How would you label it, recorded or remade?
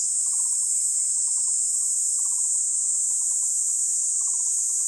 recorded